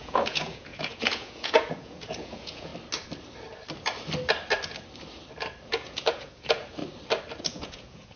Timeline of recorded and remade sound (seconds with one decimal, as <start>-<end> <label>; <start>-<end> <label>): 0.0-2.7 remade; 2.7-5.7 recorded; 5.7-6.8 remade; 6.8-7.4 recorded; 7.4-8.2 remade